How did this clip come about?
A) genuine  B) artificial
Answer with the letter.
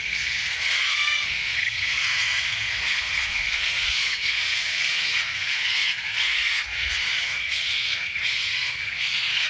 B